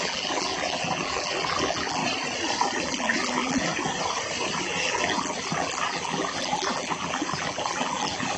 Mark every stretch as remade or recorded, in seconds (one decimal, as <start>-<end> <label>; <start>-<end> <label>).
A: 0.0-2.0 remade; 2.0-2.8 recorded; 2.8-3.7 remade; 3.7-4.6 recorded; 4.6-8.4 remade